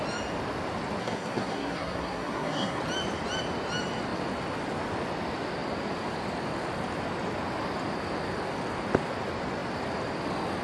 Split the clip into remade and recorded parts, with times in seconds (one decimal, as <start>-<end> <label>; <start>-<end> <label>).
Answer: 0.0-1.0 recorded; 1.0-2.8 remade; 2.8-10.6 recorded